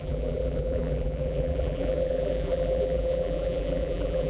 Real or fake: fake